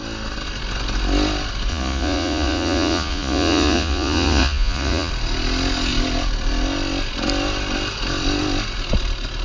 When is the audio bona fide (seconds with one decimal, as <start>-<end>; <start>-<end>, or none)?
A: 0.0-1.7; 5.1-9.4